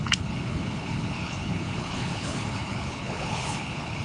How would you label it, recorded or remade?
remade